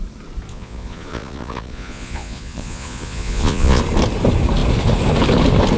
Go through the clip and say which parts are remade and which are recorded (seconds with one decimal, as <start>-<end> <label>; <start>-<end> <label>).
0.0-0.5 recorded; 0.5-3.8 remade; 3.8-5.8 recorded